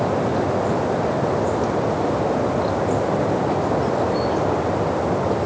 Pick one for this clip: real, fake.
real